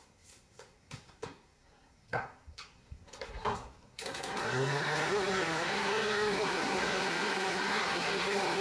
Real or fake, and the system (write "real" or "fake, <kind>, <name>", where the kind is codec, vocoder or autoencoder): fake, codec, SNAC